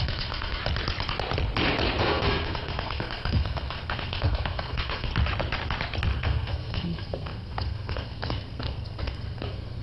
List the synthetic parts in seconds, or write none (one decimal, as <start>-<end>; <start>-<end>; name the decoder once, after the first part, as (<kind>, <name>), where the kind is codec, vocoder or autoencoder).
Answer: 0.0-0.6 (codec, SNAC); 2.0-5.1; 6.2-9.8